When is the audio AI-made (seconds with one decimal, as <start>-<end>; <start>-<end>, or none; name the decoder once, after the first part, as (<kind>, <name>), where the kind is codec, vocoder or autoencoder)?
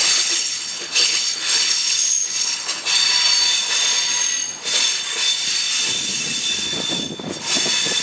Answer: 0.0-2.8 (codec, HILCodec)